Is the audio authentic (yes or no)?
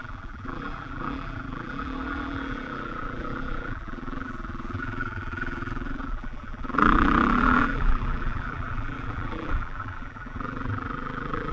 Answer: no